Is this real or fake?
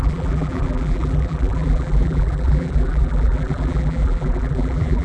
fake